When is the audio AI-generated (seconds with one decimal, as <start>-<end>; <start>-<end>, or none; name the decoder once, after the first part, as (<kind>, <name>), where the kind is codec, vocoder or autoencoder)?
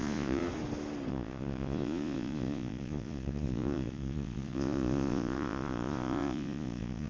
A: 0.0-0.4 (vocoder, Vocos); 1.1-7.1